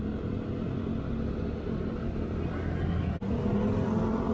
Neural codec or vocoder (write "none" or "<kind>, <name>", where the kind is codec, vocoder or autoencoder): none